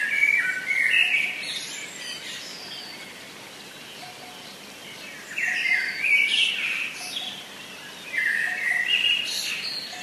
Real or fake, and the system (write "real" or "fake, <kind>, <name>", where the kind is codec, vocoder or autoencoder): fake, vocoder, BigVGAN v2